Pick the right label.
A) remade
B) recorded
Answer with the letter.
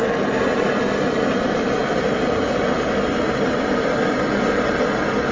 B